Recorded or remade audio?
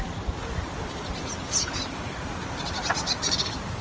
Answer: recorded